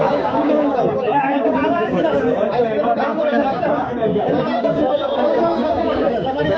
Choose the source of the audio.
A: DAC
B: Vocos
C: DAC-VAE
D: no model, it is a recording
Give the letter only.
A